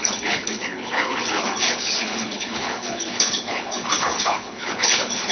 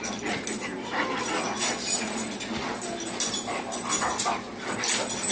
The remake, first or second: first